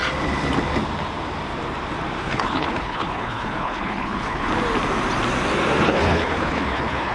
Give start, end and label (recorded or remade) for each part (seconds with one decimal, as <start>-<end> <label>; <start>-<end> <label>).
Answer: 0.0-2.2 recorded; 2.2-4.5 remade; 4.5-5.8 recorded; 5.8-7.1 remade